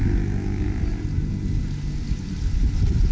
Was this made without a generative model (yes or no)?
yes